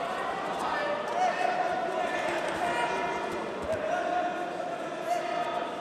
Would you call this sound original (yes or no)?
yes